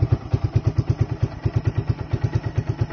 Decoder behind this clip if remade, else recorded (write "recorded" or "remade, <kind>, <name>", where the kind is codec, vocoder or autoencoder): recorded